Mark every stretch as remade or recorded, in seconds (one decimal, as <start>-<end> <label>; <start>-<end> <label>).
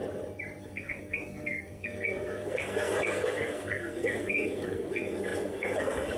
0.0-0.6 recorded; 0.6-6.2 remade